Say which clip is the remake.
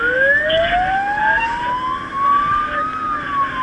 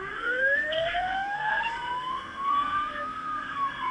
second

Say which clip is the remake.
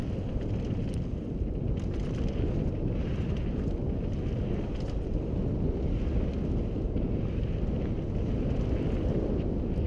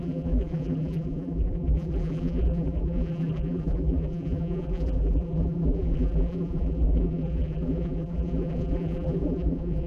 second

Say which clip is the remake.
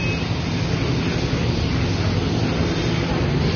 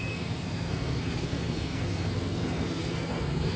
second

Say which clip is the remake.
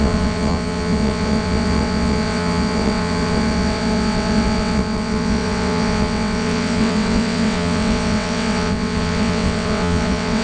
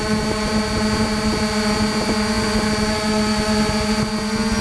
first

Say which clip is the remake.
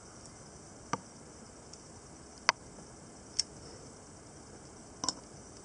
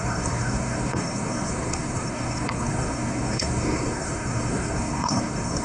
second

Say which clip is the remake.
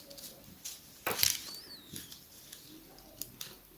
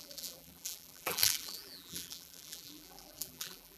second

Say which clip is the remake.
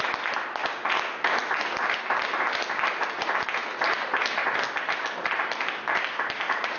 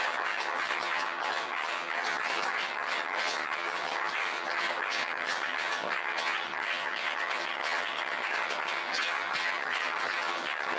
second